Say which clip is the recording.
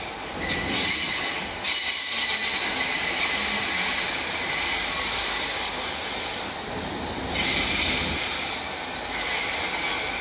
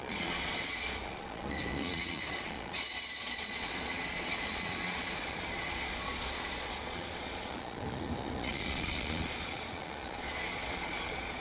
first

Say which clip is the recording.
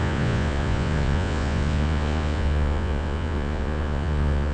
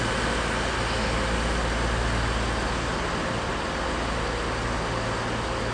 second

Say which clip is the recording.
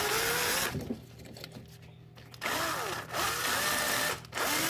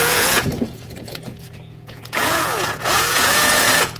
first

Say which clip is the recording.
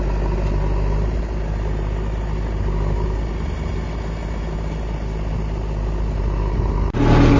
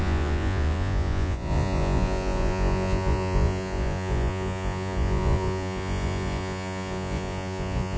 first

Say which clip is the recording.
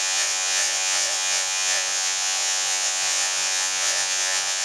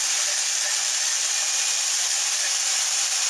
second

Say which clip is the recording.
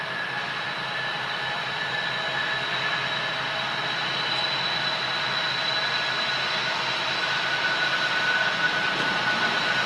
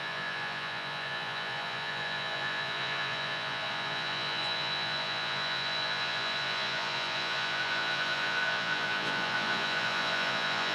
first